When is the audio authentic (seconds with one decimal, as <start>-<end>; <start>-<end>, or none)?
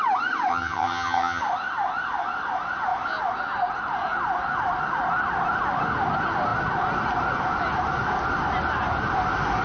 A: 0.0-0.5; 1.4-9.6